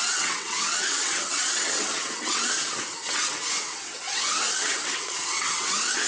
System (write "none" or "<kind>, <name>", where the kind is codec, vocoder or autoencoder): vocoder, WaveNeXt